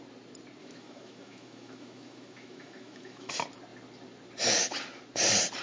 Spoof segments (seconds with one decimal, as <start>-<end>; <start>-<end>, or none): 0.6-3.3